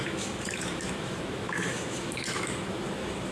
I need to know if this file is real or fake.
fake